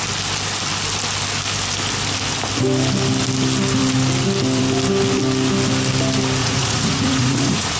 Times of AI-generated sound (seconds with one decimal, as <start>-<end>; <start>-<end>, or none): 6.4-7.8